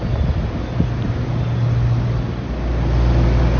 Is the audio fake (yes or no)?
no